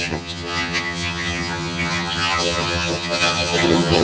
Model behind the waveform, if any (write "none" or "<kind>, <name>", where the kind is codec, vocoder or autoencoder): vocoder, HiFi-GAN